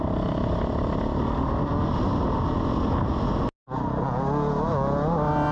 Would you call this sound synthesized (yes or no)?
no